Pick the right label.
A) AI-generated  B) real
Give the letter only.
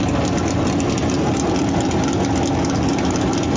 B